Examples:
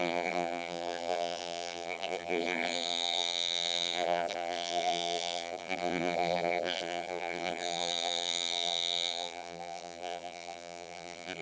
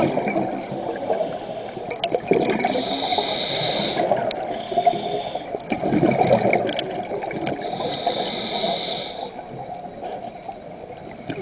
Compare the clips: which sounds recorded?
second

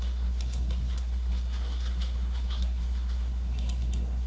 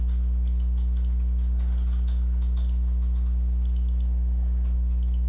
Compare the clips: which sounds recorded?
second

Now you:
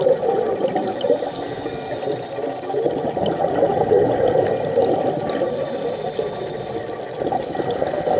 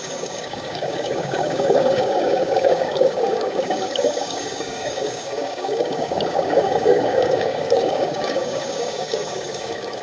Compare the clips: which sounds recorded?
first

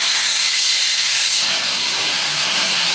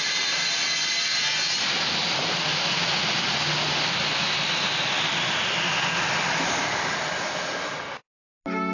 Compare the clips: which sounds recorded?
second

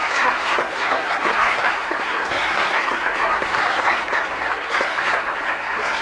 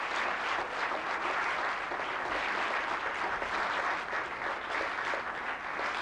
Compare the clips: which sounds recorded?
second